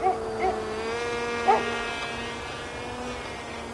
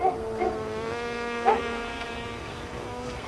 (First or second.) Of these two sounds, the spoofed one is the second